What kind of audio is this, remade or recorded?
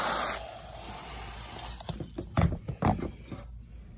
recorded